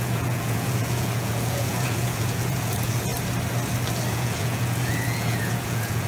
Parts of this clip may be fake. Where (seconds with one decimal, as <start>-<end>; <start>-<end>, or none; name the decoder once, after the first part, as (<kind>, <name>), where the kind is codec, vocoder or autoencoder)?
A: 0.0-3.1 (vocoder, Vocos); 4.1-6.1